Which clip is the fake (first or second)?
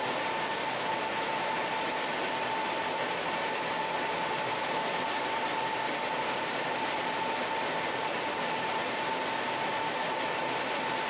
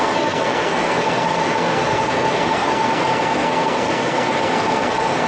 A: second